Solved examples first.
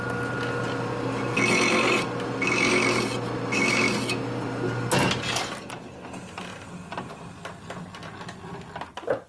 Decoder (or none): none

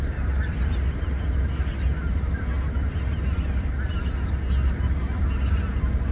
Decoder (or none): none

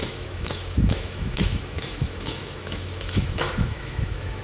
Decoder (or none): autoencoder, DAC-VAE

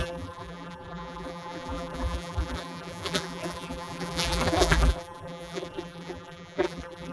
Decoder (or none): vocoder, BigVGAN v2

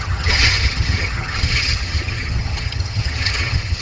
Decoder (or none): vocoder, HiFi-GAN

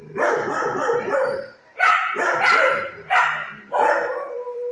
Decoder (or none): vocoder, BigVGAN v2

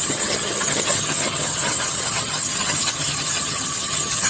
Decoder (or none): vocoder, HiFi-GAN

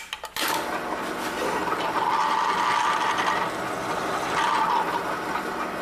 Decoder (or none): none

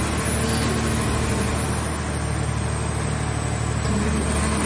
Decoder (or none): none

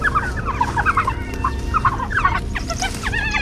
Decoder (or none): none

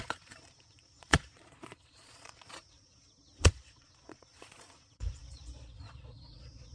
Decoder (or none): vocoder, Vocos